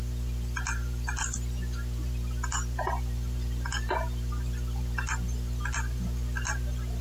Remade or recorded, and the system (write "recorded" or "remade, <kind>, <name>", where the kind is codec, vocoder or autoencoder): remade, vocoder, BigVGAN v2